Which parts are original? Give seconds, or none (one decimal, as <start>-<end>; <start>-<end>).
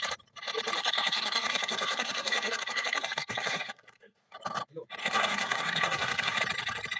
0.0-0.8; 4.2-5.0; 6.4-7.0